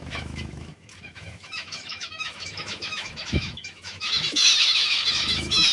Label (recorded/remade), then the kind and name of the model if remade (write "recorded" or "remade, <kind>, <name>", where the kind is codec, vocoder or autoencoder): remade, autoencoder, DAC-VAE